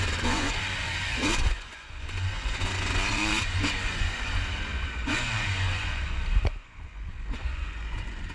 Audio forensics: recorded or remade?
remade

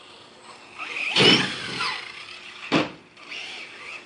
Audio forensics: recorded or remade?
recorded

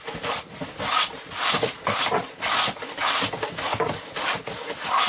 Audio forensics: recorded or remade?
recorded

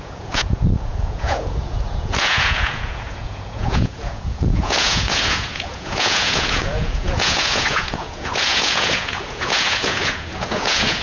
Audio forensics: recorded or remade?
remade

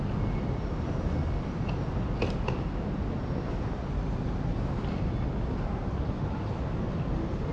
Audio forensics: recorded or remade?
recorded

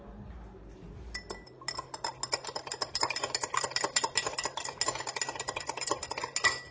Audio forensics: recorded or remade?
recorded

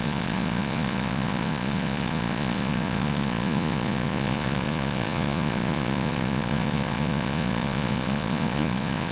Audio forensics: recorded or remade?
remade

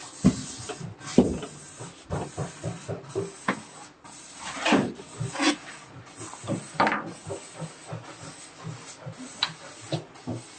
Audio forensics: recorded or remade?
recorded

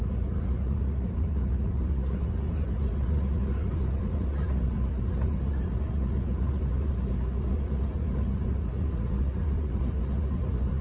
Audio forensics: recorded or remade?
remade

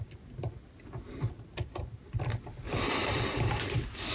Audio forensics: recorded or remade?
recorded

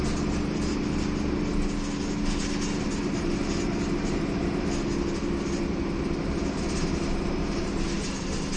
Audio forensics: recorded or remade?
recorded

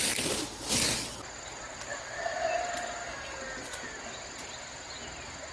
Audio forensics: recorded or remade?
recorded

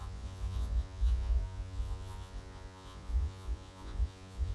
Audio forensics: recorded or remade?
remade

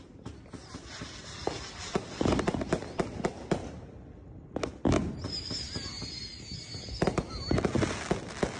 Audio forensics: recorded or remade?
recorded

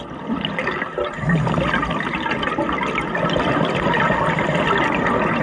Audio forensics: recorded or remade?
recorded